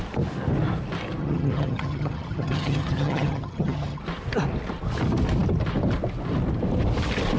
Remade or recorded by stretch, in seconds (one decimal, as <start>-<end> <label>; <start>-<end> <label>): 0.0-1.2 recorded; 1.2-4.0 remade; 4.0-7.4 recorded